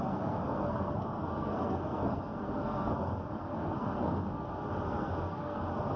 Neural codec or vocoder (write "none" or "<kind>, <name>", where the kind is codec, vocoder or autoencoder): codec, SNAC